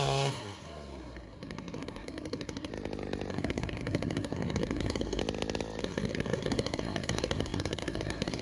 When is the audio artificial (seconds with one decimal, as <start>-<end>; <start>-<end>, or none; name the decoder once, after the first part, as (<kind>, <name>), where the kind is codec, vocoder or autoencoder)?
0.0-2.7 (codec, SNAC); 3.3-5.2; 5.8-8.4